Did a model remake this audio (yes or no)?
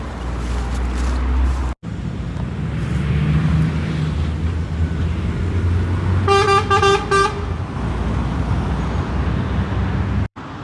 no